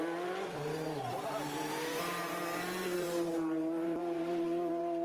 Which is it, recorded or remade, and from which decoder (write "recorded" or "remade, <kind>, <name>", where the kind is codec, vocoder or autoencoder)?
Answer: remade, vocoder, BigVGAN v2